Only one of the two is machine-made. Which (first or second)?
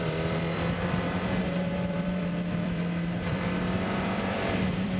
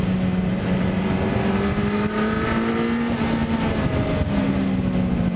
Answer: first